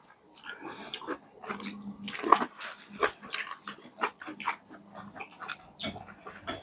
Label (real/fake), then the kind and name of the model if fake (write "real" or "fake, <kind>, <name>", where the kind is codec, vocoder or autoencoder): real